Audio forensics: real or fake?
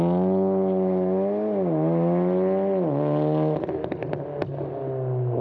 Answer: real